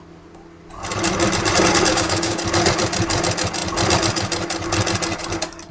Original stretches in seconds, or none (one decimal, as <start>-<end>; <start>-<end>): 0.0-1.9; 2.4-5.7